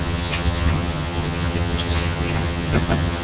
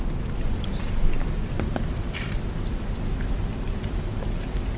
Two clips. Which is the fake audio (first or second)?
first